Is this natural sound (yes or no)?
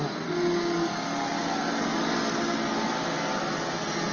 yes